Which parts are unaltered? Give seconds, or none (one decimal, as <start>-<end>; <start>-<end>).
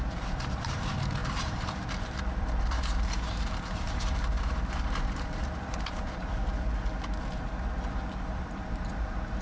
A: 6.7-7.8